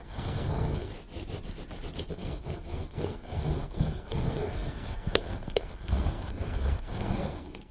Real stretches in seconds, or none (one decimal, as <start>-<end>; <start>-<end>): 0.9-2.1